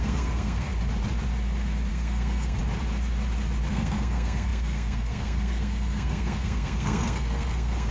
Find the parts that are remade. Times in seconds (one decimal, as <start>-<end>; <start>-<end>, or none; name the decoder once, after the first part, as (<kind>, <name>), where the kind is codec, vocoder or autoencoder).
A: 0.0-0.7 (codec, SNAC); 1.9-2.6; 3.7-7.9

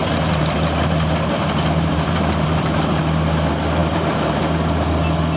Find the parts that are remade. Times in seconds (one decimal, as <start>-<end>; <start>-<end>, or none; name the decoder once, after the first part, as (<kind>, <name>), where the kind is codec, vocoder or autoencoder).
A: 0.0-3.0 (vocoder, BigVGAN v2); 3.8-4.4